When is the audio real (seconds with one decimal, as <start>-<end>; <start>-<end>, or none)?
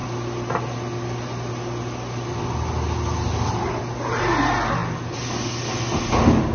0.0-6.5